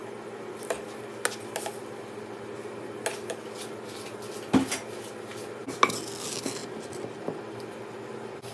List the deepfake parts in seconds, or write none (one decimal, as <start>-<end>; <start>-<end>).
none